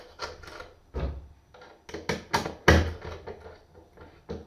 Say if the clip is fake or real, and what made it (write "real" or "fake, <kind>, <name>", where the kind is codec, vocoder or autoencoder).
real